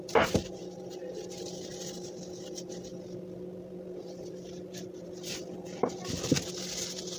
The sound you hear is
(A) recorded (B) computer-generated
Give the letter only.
A